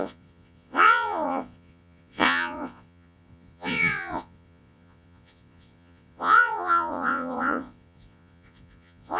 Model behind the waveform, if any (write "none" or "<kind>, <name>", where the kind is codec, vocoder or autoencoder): vocoder, Vocos